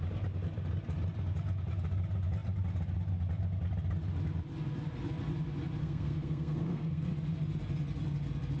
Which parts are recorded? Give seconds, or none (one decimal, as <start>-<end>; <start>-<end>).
0.0-5.8; 7.1-8.6